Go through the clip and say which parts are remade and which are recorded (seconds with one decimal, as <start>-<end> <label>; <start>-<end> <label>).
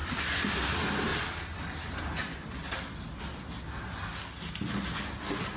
0.0-0.5 remade; 0.5-5.6 recorded